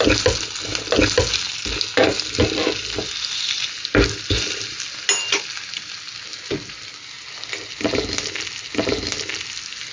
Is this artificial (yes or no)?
no